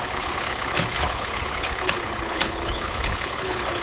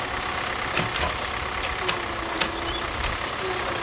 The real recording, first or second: second